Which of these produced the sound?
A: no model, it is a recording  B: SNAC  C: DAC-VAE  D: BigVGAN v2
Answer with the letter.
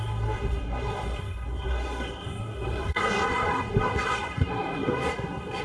B